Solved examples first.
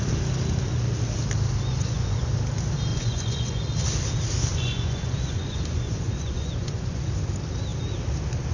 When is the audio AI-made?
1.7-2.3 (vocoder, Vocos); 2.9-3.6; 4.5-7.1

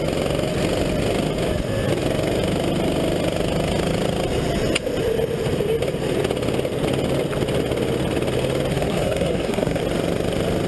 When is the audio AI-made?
8.7-9.8 (codec, SNAC)

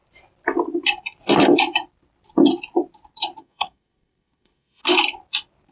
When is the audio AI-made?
3.4-4.8 (codec, SNAC)

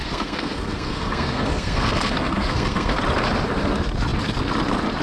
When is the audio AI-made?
0.0-3.0 (codec, SNAC)

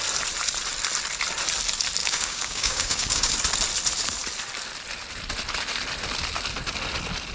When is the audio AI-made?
2.0-3.3 (codec, DAC)

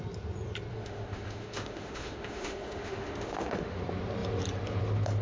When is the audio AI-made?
0.7-3.8 (autoencoder, DAC-VAE)

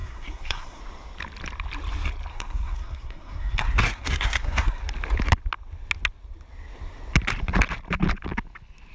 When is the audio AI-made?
0.0-0.8 (codec, SNAC); 2.3-4.8